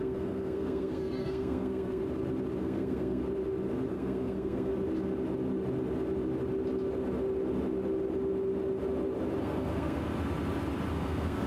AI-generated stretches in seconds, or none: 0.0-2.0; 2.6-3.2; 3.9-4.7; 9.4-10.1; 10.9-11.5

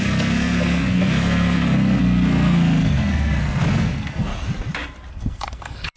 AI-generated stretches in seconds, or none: 0.0-4.3; 5.1-6.0

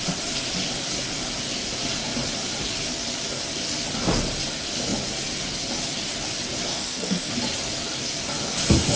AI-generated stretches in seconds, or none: 6.7-7.3

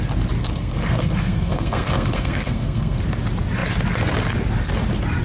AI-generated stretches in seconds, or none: 0.4-3.0

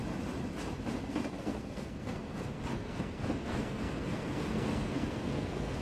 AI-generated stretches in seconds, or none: 1.1-5.8

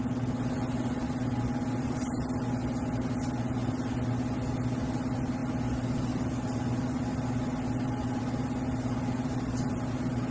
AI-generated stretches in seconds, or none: none

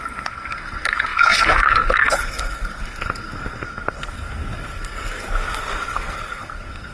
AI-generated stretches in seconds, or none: 0.0-6.9

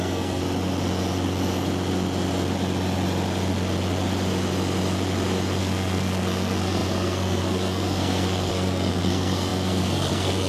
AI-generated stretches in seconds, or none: 0.0-0.4; 5.6-10.5